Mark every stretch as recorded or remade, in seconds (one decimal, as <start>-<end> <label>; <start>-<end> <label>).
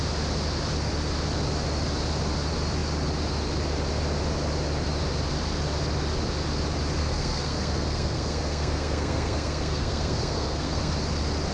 0.0-7.0 recorded; 7.0-10.9 remade; 10.9-11.5 recorded